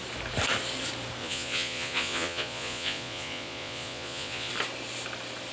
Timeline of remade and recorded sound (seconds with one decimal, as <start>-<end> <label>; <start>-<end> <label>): 0.0-1.2 recorded; 1.2-4.5 remade; 4.5-5.5 recorded